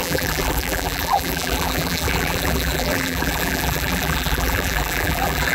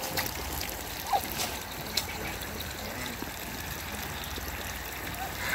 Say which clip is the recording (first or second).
second